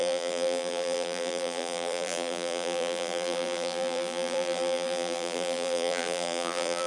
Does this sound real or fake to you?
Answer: fake